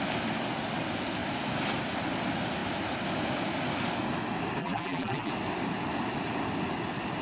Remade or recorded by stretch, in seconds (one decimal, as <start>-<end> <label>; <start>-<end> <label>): 0.0-4.6 recorded; 4.6-5.3 remade; 5.3-7.2 recorded